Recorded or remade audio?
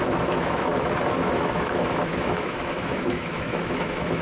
remade